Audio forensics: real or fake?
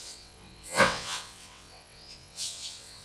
fake